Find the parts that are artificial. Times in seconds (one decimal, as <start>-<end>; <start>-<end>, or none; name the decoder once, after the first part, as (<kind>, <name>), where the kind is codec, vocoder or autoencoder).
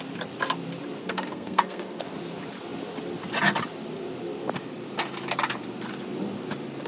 1.0-2.0 (codec, SNAC)